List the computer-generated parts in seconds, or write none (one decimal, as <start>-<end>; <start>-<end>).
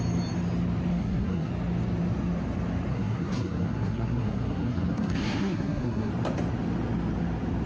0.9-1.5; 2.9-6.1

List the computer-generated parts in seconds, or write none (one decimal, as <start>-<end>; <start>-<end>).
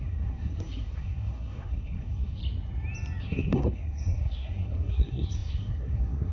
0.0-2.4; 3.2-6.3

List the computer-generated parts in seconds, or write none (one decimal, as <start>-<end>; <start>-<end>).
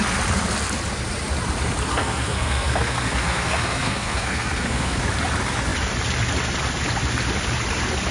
1.9-5.0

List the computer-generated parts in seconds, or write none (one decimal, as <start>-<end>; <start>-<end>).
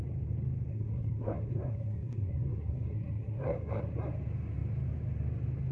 0.7-3.8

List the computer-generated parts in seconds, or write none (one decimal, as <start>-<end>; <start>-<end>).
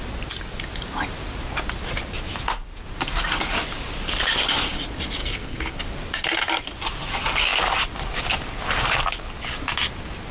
5.2-5.8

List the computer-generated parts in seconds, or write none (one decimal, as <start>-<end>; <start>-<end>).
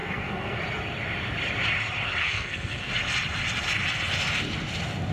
0.0-0.6; 2.2-2.9